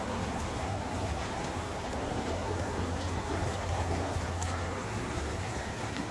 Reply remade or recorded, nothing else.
remade